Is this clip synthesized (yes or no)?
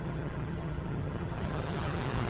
yes